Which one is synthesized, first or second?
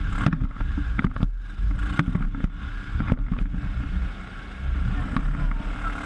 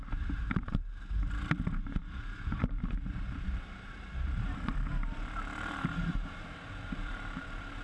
second